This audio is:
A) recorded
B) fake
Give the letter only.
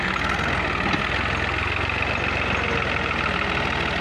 A